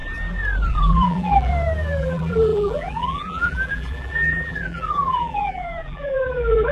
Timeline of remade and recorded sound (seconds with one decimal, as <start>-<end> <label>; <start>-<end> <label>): 0.0-0.7 recorded; 0.7-1.5 remade; 1.5-2.0 recorded; 2.0-6.7 remade